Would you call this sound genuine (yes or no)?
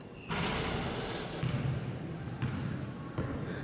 yes